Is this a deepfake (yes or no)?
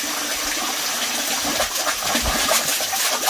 no